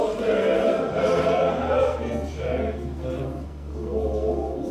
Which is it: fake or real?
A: fake